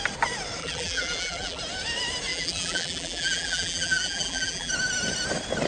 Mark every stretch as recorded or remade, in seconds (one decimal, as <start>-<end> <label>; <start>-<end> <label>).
0.0-0.6 recorded; 0.6-1.6 remade; 1.6-2.3 recorded; 2.3-4.7 remade; 4.7-5.7 recorded

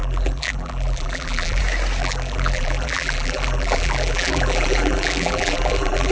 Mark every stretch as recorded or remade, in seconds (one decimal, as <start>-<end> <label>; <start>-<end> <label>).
0.0-1.6 remade; 1.6-2.0 recorded; 2.0-6.1 remade

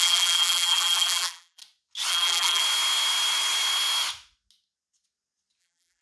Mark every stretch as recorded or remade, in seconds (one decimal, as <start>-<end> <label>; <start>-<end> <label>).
0.0-1.6 remade; 1.6-2.1 recorded; 2.1-2.6 remade; 2.6-5.6 recorded; 5.6-6.0 remade

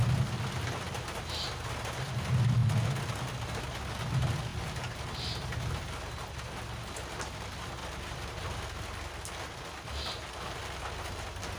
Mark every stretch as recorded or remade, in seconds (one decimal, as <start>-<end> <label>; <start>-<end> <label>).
0.0-11.6 recorded

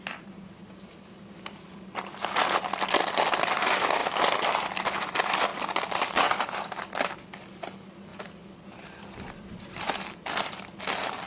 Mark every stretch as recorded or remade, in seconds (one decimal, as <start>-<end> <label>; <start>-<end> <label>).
0.0-4.0 recorded; 4.0-4.5 remade; 4.5-11.3 recorded

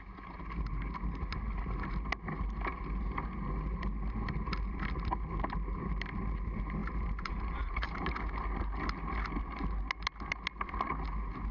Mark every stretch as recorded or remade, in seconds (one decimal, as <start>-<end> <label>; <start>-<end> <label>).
0.0-6.8 recorded; 6.8-8.1 remade; 8.1-11.5 recorded

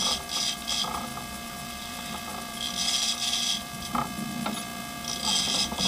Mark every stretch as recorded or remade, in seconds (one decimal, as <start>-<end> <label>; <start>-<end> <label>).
0.0-4.7 remade; 4.7-5.4 recorded; 5.4-5.9 remade